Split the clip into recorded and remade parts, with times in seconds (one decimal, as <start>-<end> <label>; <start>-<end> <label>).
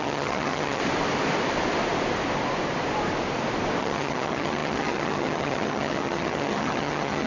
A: 0.0-0.8 remade; 0.8-3.8 recorded; 3.8-7.3 remade